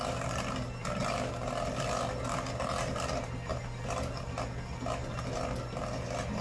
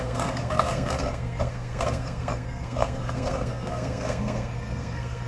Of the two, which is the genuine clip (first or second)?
first